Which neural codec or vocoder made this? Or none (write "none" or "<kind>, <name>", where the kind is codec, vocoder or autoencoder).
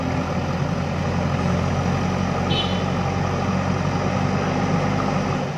none